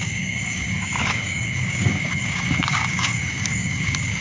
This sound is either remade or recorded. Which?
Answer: remade